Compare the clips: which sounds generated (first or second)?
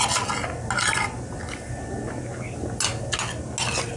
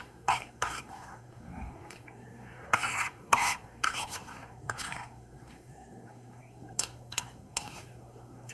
second